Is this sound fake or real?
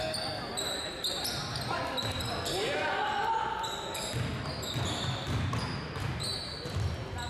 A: real